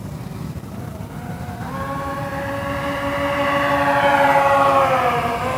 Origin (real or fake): fake